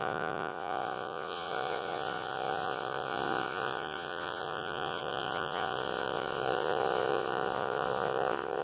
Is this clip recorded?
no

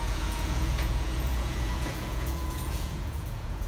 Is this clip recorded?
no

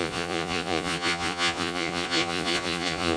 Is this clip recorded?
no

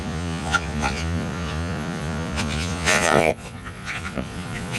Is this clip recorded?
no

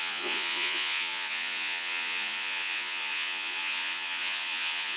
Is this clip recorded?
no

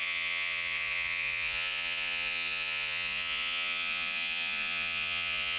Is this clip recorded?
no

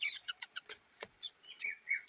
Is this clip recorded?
no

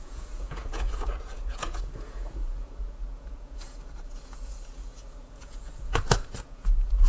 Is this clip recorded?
no